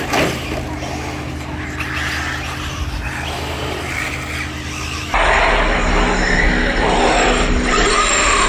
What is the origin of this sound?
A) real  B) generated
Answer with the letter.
A